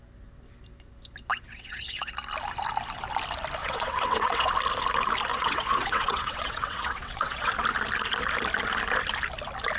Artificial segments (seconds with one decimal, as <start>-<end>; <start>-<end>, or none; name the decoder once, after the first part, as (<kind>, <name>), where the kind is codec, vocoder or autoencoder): 1.3-2.1 (vocoder, WaveNeXt); 3.6-4.5; 5.3-7.5